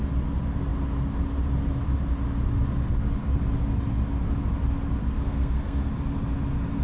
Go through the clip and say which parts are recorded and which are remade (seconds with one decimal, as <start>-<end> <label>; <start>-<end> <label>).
0.0-5.0 recorded; 5.0-5.9 remade; 5.9-6.8 recorded